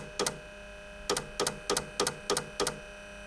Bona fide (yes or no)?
yes